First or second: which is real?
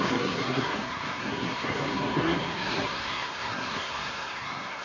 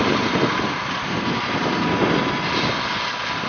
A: second